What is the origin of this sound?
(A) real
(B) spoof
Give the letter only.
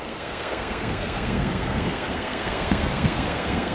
B